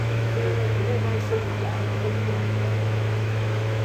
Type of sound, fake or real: fake